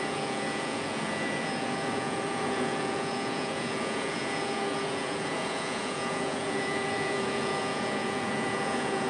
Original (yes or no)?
no